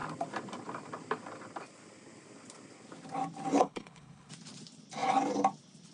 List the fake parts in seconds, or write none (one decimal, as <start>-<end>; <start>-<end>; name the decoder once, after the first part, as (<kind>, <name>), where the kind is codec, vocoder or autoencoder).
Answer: 3.6-4.3 (codec, HILCodec)